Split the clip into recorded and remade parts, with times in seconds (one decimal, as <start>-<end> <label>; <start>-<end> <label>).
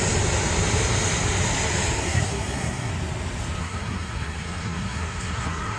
0.0-2.0 recorded; 2.0-2.9 remade; 2.9-3.6 recorded; 3.6-5.8 remade